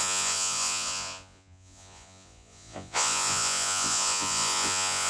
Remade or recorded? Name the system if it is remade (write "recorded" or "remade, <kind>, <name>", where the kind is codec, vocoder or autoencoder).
remade, vocoder, Vocos